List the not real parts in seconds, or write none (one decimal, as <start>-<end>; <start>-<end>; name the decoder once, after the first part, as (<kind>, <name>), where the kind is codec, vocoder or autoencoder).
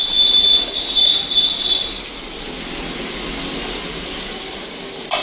0.0-0.6 (vocoder, Vocos)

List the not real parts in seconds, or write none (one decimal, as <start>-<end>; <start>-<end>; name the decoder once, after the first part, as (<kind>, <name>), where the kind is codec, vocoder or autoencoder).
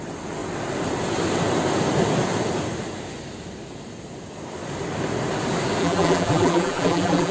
5.8-7.3 (vocoder, BigVGAN v2)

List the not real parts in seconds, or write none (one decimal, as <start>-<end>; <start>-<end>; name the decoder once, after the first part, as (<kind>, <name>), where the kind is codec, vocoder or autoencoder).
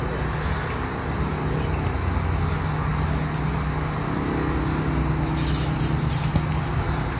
none